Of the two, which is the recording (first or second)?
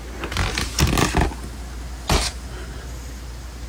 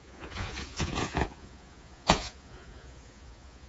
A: first